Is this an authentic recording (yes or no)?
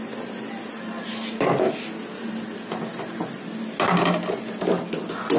yes